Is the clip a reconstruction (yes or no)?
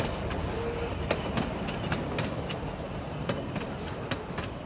no